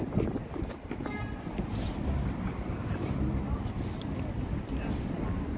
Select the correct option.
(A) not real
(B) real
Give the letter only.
B